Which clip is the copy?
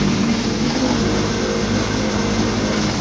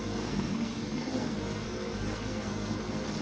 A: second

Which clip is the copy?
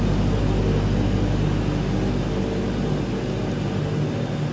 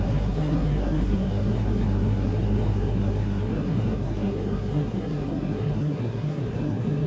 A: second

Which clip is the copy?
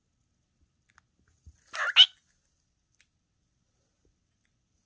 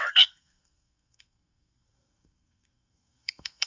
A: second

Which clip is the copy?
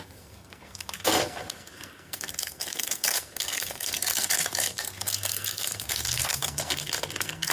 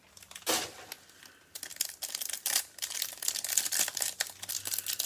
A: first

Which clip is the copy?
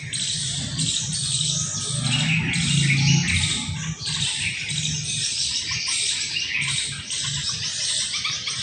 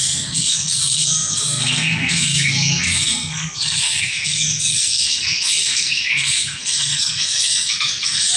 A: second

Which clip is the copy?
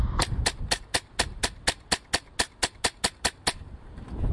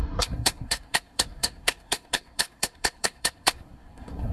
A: second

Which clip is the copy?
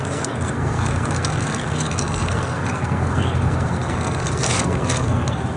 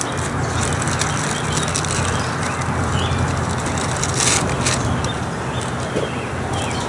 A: first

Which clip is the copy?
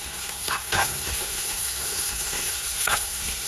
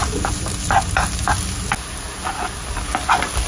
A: first